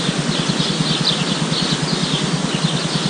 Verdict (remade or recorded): recorded